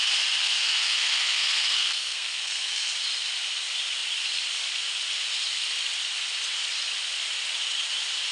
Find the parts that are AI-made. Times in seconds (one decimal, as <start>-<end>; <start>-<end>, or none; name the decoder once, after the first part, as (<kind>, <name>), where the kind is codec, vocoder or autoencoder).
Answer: 0.4-2.9 (codec, SNAC)